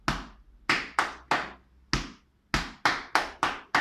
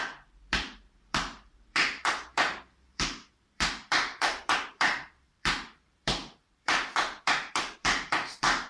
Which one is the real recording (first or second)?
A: first